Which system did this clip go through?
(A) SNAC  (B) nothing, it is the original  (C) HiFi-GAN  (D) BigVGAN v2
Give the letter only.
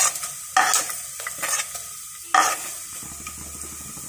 B